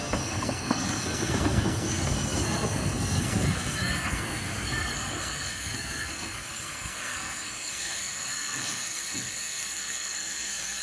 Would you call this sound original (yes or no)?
no